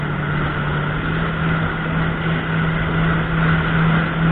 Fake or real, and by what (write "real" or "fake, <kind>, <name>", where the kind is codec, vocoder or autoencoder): real